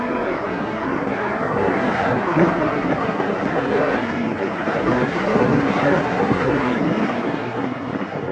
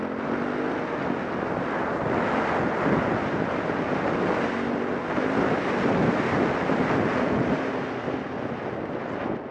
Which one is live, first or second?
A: second